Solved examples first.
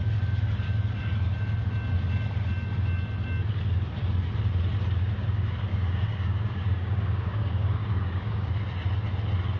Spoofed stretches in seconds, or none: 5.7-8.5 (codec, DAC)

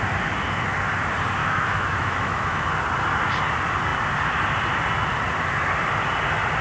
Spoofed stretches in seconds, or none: 1.4-2.7 (autoencoder, DAC-VAE)

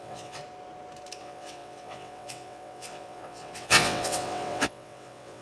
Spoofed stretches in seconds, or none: 0.0-0.4 (vocoder, WaveNeXt); 1.2-5.4